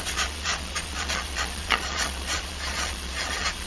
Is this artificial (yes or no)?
yes